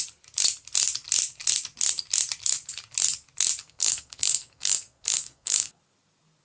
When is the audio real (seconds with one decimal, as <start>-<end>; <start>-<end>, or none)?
0.0-3.6; 5.8-6.4